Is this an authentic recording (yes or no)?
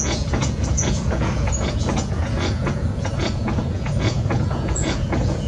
no